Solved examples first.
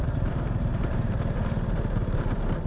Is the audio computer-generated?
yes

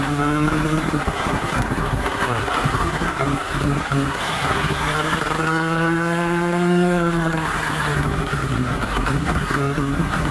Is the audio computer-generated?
yes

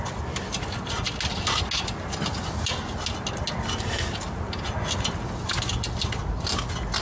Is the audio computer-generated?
no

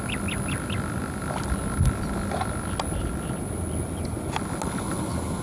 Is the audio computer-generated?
no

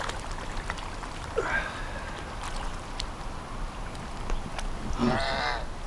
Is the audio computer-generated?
no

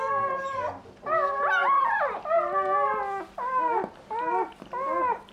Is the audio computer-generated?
no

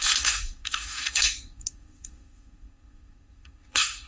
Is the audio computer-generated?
yes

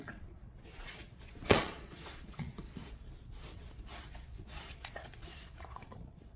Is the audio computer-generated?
yes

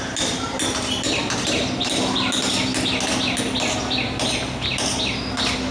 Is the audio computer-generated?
no